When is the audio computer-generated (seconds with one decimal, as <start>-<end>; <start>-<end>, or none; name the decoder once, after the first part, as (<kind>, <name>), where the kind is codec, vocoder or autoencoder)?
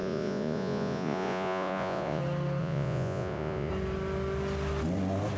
0.0-2.2 (vocoder, Vocos); 2.6-3.7